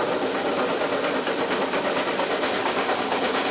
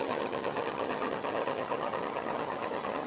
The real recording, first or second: first